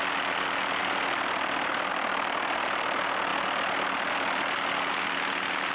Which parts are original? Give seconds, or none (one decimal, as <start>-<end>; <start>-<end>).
0.0-5.7